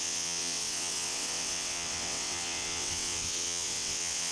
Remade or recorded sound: remade